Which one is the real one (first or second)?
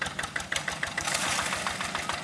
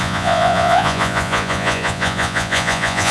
first